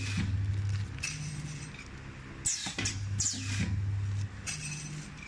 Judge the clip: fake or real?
real